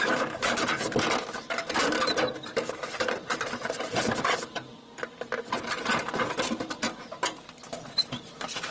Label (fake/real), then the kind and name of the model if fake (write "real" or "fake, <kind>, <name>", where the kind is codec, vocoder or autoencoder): real